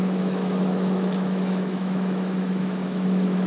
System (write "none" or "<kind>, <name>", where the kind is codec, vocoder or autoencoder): autoencoder, DAC-VAE